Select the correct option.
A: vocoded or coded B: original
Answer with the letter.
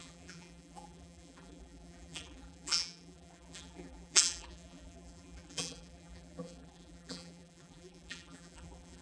A